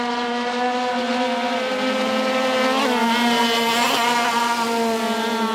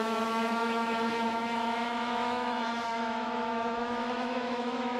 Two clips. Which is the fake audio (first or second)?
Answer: second